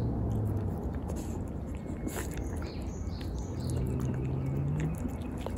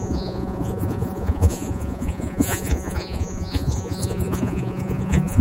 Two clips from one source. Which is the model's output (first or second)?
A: second